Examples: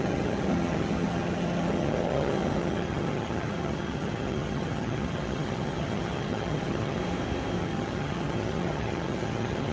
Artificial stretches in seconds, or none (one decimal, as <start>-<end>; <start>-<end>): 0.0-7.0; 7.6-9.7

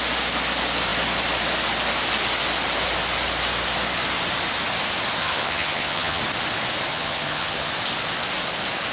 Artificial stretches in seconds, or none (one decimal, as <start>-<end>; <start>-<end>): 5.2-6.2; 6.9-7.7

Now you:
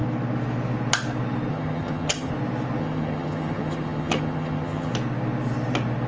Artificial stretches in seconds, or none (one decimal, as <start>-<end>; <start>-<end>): 1.5-2.3; 2.8-4.9

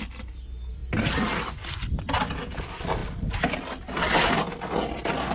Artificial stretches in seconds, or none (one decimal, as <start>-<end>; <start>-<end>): none

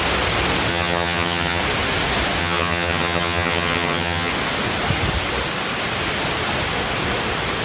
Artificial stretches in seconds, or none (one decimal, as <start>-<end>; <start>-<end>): 0.7-1.6; 2.4-4.3

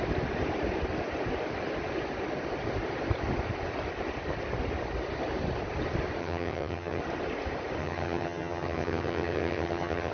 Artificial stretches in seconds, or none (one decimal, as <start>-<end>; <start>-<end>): 6.2-7.0; 7.8-10.1

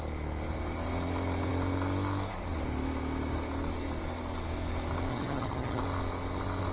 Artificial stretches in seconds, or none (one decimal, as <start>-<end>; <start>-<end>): 5.1-5.8

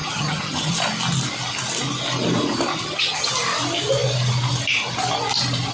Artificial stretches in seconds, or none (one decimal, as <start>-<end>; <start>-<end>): 0.0-0.7; 2.7-3.3